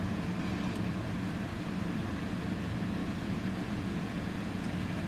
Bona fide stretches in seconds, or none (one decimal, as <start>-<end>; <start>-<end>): 0.0-3.0